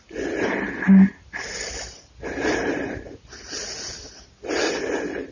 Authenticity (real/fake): real